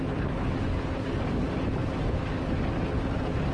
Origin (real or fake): real